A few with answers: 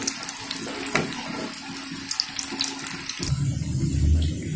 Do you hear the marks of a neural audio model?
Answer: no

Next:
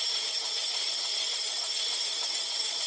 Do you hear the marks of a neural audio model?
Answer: yes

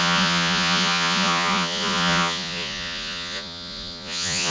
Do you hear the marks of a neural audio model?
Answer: yes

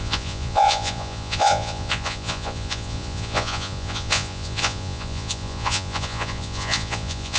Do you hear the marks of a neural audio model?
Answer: yes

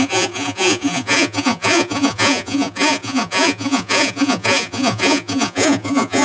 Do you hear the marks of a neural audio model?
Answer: yes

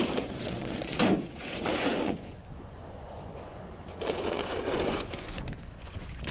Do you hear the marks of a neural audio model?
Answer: yes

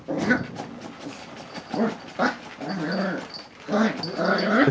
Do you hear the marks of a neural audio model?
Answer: no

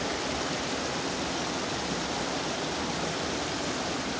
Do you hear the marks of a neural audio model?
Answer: no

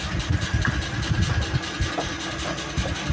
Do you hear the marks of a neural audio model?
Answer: no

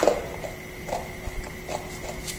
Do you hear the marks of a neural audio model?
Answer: no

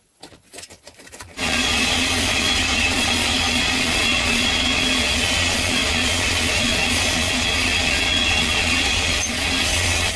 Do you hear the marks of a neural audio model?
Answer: yes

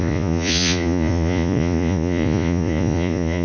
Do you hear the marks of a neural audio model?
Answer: yes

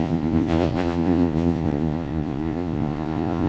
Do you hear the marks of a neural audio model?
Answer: yes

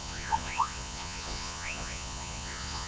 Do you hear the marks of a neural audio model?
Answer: yes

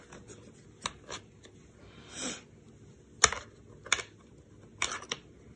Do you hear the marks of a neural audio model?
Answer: no